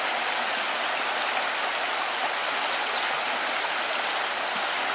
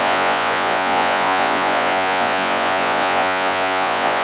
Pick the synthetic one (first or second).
second